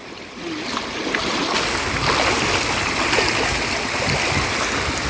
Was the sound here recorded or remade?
recorded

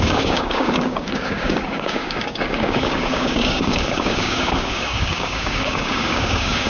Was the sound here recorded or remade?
remade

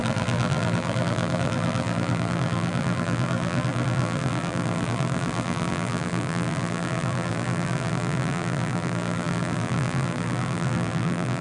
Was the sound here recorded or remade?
remade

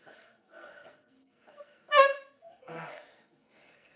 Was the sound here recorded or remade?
remade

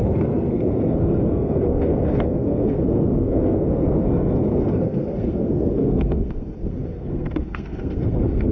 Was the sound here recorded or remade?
remade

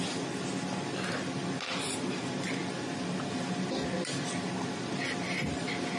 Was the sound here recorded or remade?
recorded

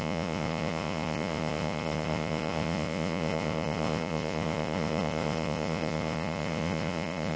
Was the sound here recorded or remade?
remade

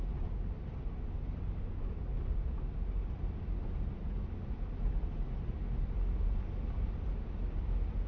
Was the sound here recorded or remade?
recorded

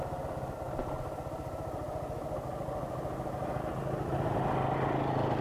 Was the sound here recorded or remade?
recorded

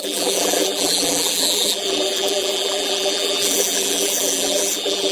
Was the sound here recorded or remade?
remade